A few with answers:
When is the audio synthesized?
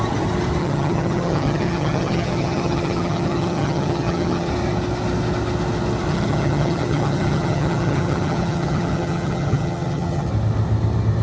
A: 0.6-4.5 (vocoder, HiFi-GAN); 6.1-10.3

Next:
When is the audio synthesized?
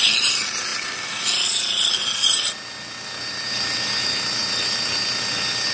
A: none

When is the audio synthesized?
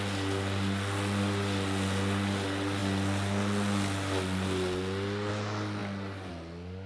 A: none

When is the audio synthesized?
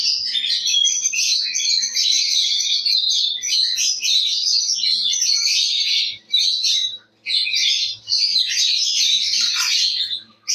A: 0.6-2.5 (vocoder, BigVGAN v2)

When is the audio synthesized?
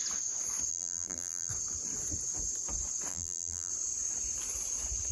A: 0.7-1.5 (vocoder, BigVGAN v2); 3.1-3.7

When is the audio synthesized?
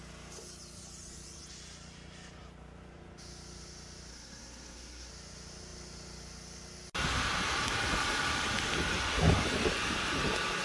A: 4.1-5.1 (codec, SNAC)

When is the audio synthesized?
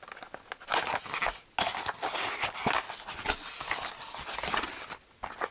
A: none